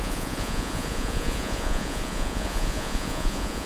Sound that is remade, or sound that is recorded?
remade